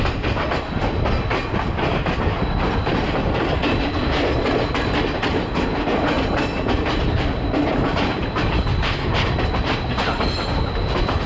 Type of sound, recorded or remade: recorded